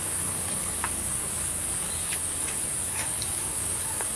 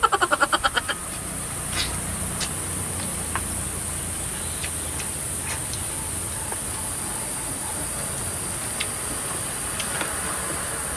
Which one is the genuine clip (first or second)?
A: second